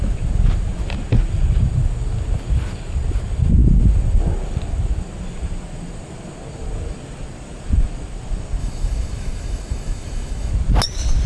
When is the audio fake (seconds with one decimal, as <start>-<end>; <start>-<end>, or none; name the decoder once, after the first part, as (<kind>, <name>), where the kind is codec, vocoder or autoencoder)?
8.6-10.5 (autoencoder, DAC-VAE)